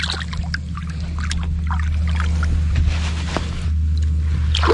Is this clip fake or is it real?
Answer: real